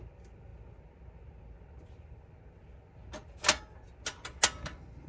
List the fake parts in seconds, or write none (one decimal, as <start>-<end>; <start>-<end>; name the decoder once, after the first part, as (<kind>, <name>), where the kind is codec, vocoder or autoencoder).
none